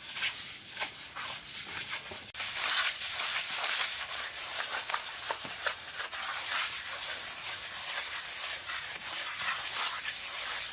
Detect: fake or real real